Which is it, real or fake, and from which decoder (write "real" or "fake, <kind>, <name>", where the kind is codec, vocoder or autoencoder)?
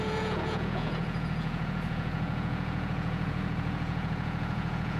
fake, vocoder, Vocos